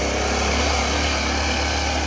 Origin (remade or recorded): recorded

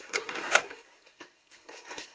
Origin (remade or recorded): remade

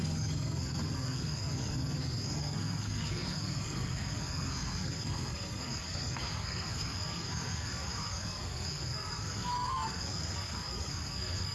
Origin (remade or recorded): remade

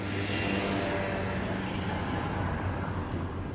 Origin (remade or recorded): recorded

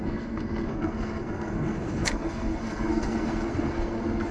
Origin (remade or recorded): remade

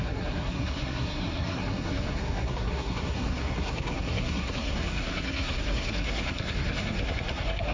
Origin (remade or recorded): remade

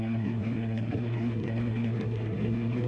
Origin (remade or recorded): remade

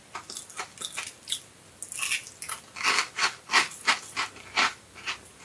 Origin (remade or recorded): recorded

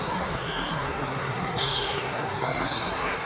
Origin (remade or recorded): remade